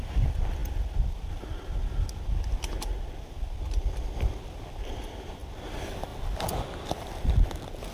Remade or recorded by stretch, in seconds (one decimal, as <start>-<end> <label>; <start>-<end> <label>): 0.0-7.9 recorded